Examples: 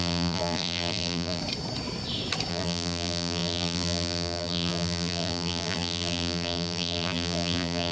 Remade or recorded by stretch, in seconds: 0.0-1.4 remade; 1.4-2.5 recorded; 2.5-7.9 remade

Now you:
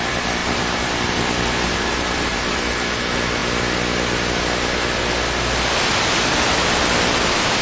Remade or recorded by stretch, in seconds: 0.0-0.4 recorded; 0.4-2.6 remade; 2.6-7.6 recorded

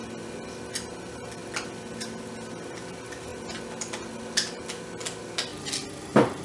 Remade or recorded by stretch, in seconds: 0.0-5.5 recorded; 5.5-6.4 remade

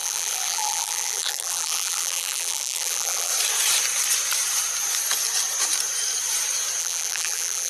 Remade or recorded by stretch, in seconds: 0.0-3.3 remade; 3.3-6.8 recorded; 6.8-7.7 remade

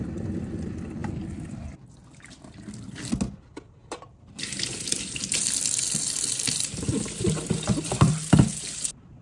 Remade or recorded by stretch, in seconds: 0.0-9.2 recorded

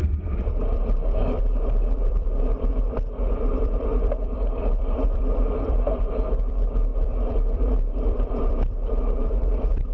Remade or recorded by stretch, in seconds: 0.0-9.9 remade

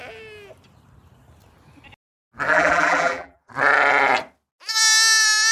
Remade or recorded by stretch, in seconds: 0.0-2.5 recorded; 2.5-3.5 remade; 3.5-5.5 recorded